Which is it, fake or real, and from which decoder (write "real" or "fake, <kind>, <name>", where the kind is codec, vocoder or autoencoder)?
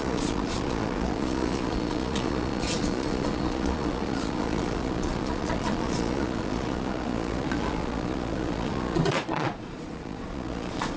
fake, vocoder, Vocos